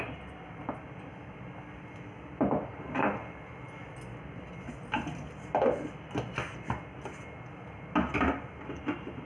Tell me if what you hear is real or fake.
real